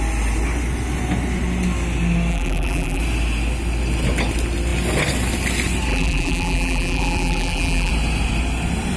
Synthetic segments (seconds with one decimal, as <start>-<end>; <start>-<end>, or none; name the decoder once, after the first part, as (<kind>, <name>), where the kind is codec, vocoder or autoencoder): 2.3-3.0 (vocoder, BigVGAN v2); 5.9-7.9